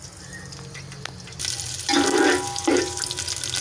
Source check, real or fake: real